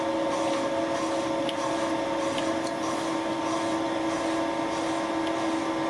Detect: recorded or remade recorded